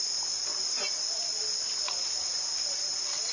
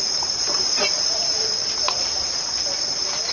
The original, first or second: first